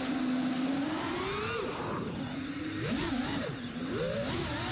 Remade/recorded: recorded